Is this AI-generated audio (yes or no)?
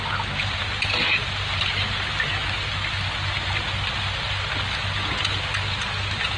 no